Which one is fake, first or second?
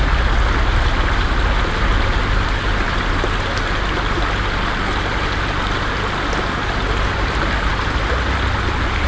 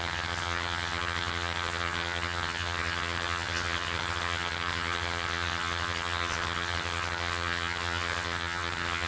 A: second